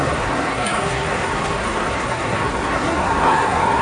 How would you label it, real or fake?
fake